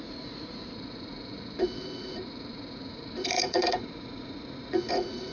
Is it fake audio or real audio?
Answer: fake